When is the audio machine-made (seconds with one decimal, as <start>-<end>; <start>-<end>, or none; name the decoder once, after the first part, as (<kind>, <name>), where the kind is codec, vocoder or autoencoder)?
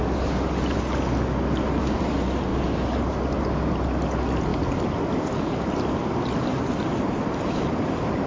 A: none